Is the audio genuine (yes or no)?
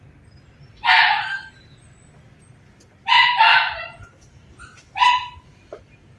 yes